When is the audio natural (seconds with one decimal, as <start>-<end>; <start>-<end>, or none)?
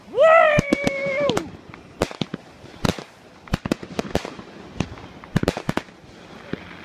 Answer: 0.0-1.0; 1.7-2.3; 4.9-6.8